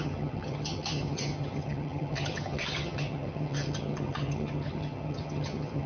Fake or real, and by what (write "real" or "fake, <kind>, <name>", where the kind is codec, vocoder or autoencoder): fake, vocoder, HiFi-GAN